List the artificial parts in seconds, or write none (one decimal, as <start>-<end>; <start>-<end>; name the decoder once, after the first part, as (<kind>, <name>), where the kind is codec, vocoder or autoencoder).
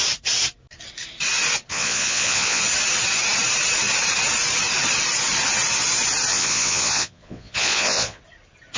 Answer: 1.7-2.6 (vocoder, Vocos); 6.3-8.2